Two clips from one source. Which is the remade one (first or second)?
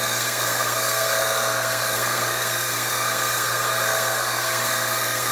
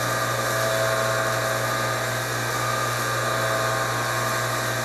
first